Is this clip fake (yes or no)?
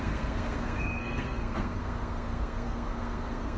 yes